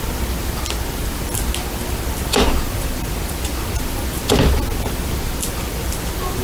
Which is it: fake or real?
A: real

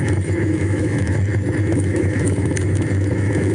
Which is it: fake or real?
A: fake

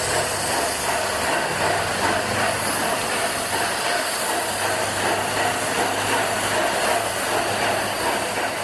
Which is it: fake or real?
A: real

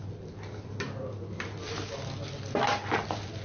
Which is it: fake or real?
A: real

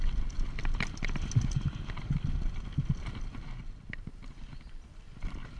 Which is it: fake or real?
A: real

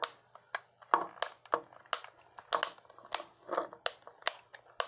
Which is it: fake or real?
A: real